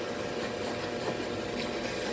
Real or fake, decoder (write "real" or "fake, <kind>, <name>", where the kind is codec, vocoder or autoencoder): real